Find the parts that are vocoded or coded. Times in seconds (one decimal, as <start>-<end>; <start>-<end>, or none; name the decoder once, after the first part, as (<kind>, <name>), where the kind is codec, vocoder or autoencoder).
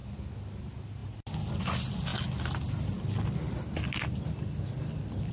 none